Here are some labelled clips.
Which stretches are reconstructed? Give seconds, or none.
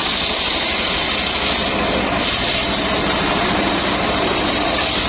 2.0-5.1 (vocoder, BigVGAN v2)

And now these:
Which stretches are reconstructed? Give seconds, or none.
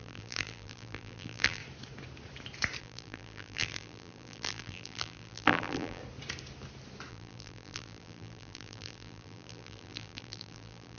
0.0-1.6 (vocoder, BigVGAN v2); 2.8-6.0; 7.1-11.0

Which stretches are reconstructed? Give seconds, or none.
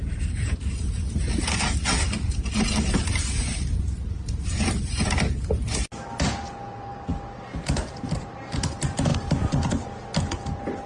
none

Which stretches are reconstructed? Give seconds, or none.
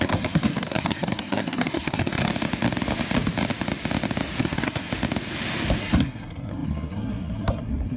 0.0-2.3 (codec, SNAC); 4.4-4.9; 5.8-8.0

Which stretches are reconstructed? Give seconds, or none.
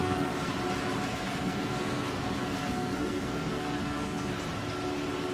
0.0-0.5 (codec, SNAC); 1.1-4.3